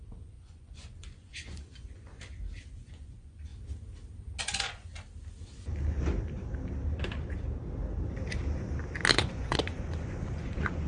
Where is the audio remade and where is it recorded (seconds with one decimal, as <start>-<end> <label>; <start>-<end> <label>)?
0.0-2.1 remade; 2.1-2.7 recorded; 2.7-3.5 remade; 3.5-4.4 recorded; 4.4-4.9 remade; 4.9-9.1 recorded; 9.1-10.9 remade

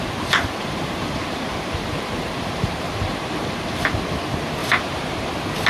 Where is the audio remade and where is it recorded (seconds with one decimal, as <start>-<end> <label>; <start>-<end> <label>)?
0.0-0.6 recorded; 0.6-4.0 remade; 4.0-4.6 recorded; 4.6-5.3 remade; 5.3-5.7 recorded

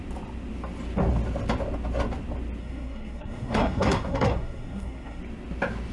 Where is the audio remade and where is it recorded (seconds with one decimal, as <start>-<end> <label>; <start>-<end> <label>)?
0.0-2.6 recorded; 2.6-5.2 remade; 5.2-5.9 recorded

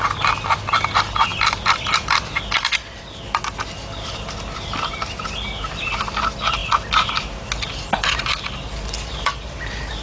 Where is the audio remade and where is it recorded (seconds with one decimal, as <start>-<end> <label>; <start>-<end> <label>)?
0.0-10.0 recorded

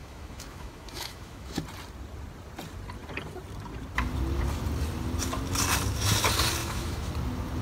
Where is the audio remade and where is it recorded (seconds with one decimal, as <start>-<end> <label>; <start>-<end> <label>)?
0.0-1.6 remade; 1.6-6.6 recorded; 6.6-7.1 remade; 7.1-7.6 recorded

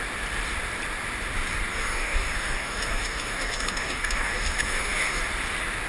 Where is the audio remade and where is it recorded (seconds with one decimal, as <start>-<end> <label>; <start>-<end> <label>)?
0.0-1.7 recorded; 1.7-5.2 remade; 5.2-5.9 recorded